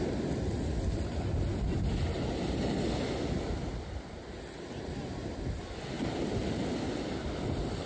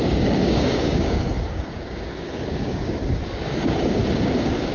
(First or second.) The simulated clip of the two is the second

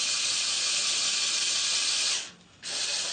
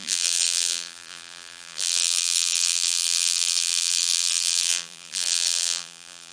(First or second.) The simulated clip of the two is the second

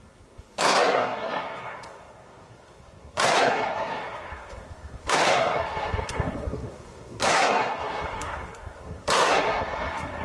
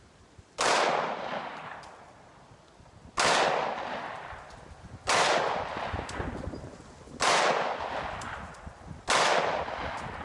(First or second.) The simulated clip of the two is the first